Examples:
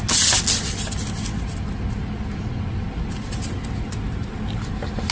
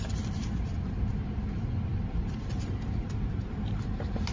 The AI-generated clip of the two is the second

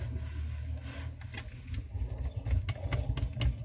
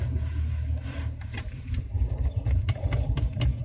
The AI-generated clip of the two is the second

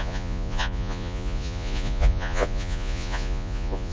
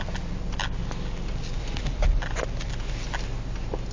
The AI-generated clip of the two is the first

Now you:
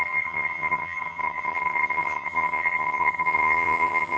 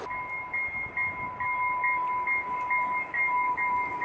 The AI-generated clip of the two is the first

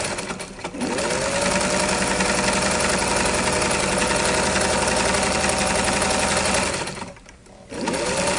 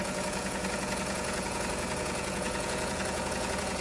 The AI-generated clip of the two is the second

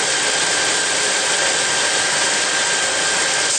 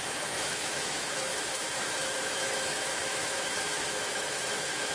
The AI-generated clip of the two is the second